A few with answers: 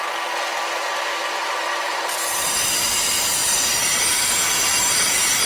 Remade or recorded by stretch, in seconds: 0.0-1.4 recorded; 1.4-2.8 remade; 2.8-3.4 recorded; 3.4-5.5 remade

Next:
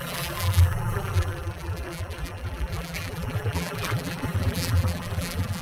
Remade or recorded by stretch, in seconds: 0.0-5.6 remade

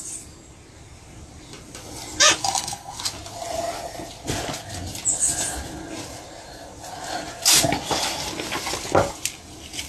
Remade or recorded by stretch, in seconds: 0.0-2.4 recorded; 2.4-3.0 remade; 3.0-9.9 recorded

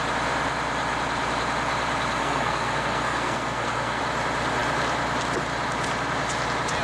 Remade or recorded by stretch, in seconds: 0.0-2.2 recorded; 2.2-4.0 remade; 4.0-6.8 recorded

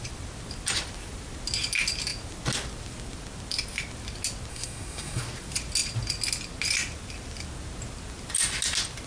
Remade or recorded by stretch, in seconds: 0.0-4.5 recorded; 4.5-5.2 remade; 5.2-9.1 recorded

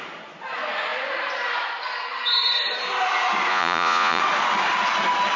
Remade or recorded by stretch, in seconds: 0.0-3.5 recorded; 3.5-4.2 remade; 4.2-5.4 recorded

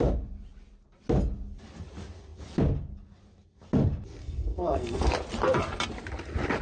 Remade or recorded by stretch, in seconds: 0.0-4.2 recorded; 4.2-5.1 remade; 5.1-6.6 recorded

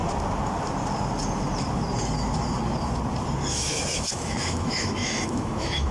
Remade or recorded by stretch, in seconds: 0.0-3.5 recorded; 3.5-5.9 remade